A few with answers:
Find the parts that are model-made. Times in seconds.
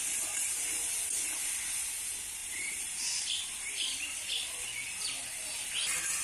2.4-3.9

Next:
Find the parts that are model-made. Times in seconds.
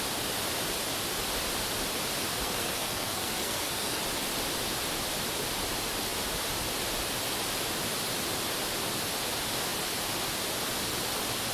2.3-4.0